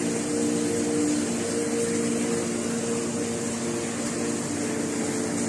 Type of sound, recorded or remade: recorded